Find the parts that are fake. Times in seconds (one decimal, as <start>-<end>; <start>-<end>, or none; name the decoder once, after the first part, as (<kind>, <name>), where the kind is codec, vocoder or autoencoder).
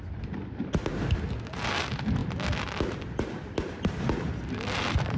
none